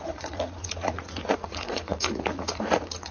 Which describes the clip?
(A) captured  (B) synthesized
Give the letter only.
B